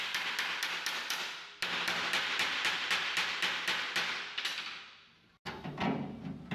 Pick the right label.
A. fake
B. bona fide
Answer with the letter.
B